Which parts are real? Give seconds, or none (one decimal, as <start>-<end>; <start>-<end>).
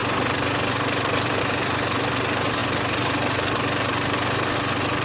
0.0-5.0